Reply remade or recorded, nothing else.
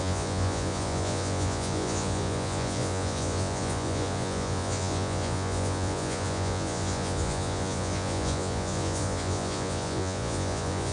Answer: remade